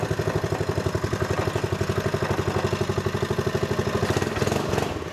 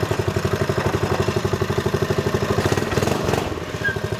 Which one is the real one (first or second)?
first